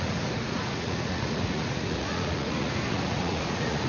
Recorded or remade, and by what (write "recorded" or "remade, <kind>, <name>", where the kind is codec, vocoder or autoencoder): remade, vocoder, Vocos